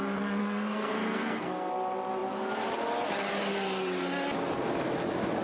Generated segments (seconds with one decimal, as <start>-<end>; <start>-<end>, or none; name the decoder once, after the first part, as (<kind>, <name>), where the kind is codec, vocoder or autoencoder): 0.4-1.7 (codec, SNAC)